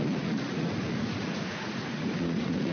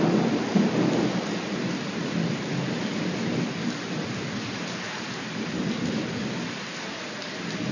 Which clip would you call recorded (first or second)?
second